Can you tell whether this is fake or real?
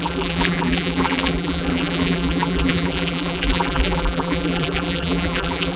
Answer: fake